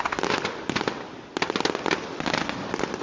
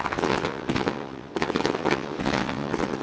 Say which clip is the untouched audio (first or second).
first